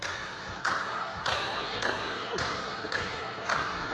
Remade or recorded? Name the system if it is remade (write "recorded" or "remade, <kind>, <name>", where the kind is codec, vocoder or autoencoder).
remade, codec, SNAC